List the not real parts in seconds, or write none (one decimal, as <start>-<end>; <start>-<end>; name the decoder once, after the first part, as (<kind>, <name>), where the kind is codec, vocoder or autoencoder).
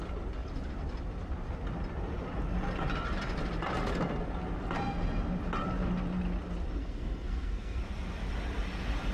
6.8-7.8 (codec, SNAC)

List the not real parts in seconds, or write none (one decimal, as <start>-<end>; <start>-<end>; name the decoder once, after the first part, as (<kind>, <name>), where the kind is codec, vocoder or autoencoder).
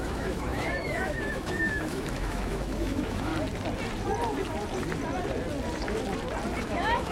0.0-3.3 (autoencoder, DAC-VAE); 6.6-7.1